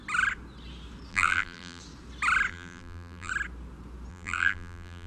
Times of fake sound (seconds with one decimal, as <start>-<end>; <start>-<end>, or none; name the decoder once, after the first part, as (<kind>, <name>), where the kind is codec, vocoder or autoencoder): 1.1-1.8 (vocoder, BigVGAN v2); 2.5-3.3; 4.1-5.1